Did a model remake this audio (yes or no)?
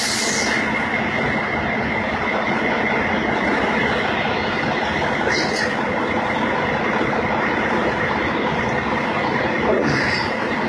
no